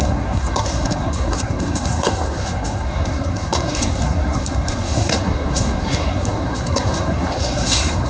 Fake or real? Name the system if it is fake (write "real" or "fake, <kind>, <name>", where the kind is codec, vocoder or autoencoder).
fake, codec, SNAC